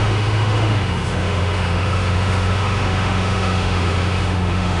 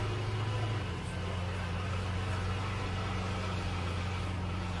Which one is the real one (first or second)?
second